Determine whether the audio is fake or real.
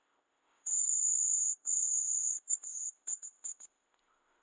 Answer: fake